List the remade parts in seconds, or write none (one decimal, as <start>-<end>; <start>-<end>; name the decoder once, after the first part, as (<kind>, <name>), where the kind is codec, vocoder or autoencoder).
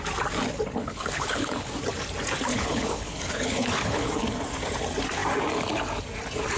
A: 0.8-1.7 (codec, HILCodec); 2.5-4.1